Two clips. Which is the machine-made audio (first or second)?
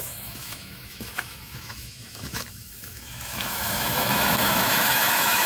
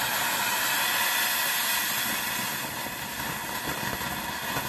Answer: first